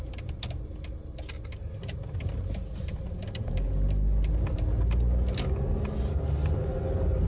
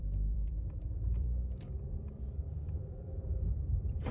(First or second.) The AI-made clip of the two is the second